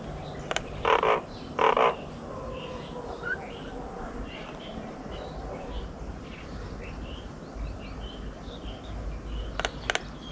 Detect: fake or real real